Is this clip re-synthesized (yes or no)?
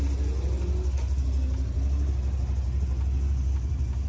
no